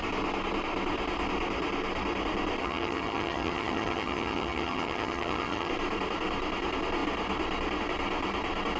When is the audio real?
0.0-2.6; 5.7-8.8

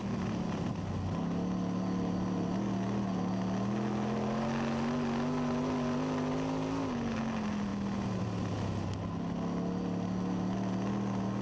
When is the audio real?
0.0-11.4

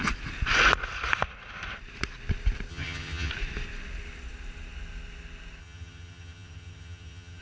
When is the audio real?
0.0-2.7; 3.3-5.6

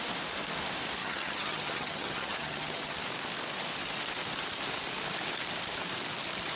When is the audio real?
0.0-1.0; 3.0-6.6